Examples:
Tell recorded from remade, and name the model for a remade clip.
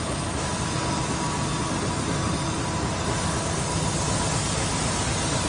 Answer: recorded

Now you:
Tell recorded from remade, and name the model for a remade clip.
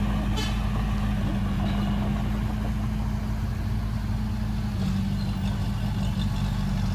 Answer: recorded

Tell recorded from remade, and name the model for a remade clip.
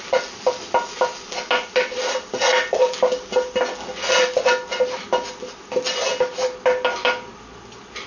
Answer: recorded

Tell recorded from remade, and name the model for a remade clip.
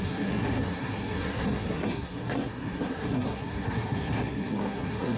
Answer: remade, codec, SNAC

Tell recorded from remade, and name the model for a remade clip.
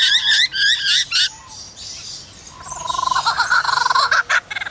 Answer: recorded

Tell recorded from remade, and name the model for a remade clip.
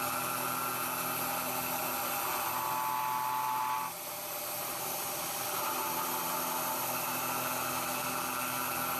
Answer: recorded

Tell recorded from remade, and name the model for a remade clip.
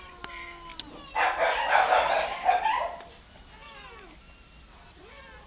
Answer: recorded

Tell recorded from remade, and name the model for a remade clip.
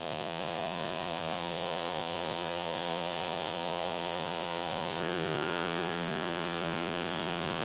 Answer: remade, vocoder, Vocos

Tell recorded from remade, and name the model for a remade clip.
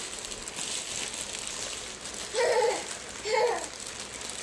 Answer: recorded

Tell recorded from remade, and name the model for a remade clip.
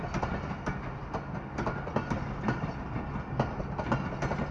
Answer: recorded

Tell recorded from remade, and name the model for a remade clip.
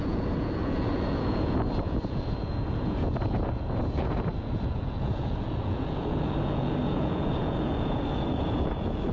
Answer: remade, vocoder, Vocos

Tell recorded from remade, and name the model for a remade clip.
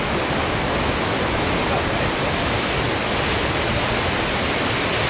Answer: recorded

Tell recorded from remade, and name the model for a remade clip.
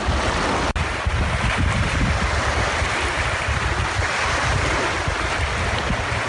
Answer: recorded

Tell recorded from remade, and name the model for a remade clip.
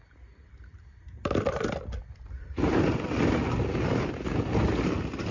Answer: recorded